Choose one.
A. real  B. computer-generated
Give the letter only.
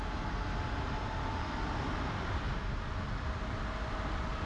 A